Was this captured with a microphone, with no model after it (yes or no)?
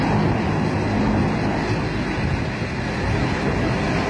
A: yes